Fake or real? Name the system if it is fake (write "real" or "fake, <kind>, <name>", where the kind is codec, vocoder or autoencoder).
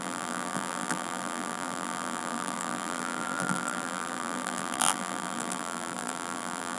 fake, vocoder, BigVGAN v2